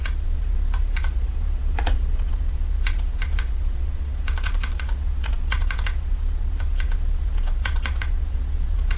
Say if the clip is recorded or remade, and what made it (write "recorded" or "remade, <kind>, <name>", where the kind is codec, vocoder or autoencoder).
remade, vocoder, Vocos